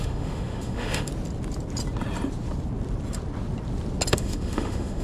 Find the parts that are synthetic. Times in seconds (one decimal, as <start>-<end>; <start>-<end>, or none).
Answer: 0.0-1.1; 4.1-5.0